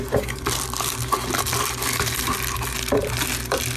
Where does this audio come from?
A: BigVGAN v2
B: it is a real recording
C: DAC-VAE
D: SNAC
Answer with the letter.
B